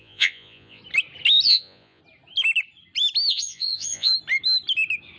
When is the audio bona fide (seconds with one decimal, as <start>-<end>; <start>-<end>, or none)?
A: 0.8-1.5; 2.0-3.3; 4.1-5.2